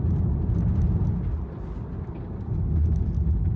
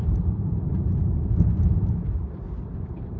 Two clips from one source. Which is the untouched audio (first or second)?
first